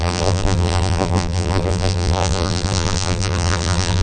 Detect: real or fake fake